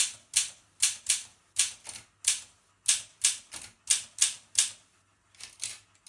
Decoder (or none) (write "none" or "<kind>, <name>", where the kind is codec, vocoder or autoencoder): none